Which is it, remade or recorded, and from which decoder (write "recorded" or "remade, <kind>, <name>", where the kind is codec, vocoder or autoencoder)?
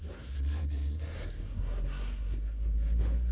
remade, codec, SNAC